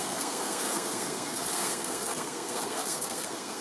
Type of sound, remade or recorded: remade